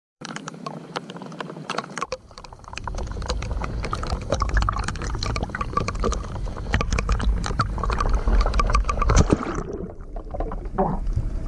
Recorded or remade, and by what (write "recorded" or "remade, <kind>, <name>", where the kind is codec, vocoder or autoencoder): remade, vocoder, BigVGAN v2